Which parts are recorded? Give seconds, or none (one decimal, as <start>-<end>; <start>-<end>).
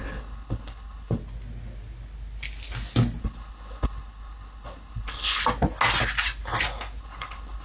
1.2-3.2; 5.4-7.0